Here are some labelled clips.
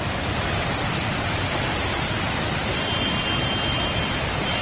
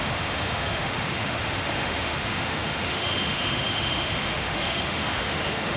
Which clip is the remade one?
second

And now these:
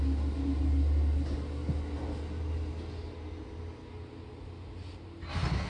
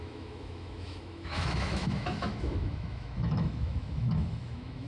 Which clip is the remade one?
second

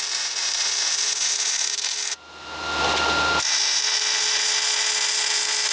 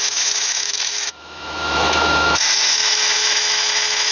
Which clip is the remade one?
second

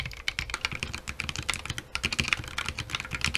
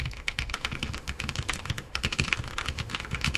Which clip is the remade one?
second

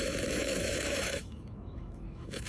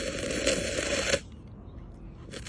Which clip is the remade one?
first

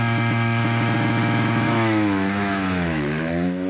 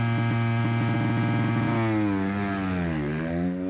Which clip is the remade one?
first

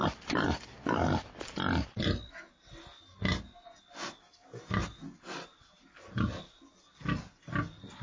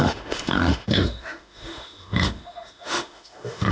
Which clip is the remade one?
second